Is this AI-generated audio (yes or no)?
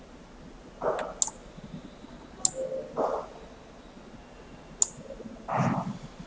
no